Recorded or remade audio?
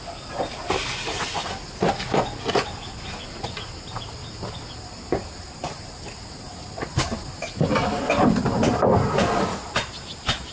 recorded